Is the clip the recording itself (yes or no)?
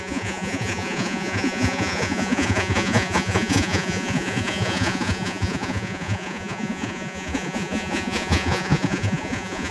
no